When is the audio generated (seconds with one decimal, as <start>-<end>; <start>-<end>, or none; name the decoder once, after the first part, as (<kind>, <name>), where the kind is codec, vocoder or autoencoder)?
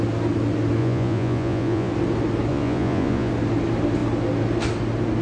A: 0.8-1.9 (vocoder, Vocos); 2.5-3.3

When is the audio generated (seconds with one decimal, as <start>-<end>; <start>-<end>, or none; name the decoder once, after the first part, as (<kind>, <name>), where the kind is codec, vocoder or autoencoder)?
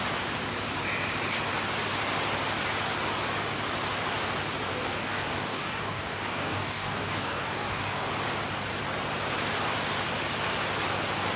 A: 4.7-8.1 (codec, DAC)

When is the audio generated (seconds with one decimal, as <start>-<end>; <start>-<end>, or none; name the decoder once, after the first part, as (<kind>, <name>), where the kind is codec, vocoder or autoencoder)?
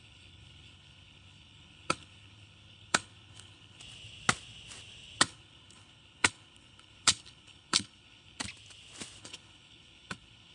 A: 0.0-3.8 (codec, HILCodec); 5.2-8.4; 9.2-10.5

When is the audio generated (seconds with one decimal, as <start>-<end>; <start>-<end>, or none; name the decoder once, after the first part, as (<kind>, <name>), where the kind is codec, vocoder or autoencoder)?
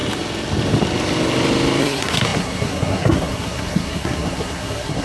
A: 1.8-5.0 (codec, SNAC)